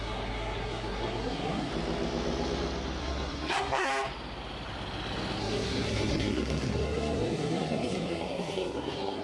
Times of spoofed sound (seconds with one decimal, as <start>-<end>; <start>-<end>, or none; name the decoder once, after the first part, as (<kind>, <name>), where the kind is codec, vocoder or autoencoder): 0.0-1.7 (codec, SNAC); 3.0-3.9; 5.4-9.2